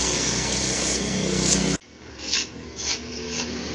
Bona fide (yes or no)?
no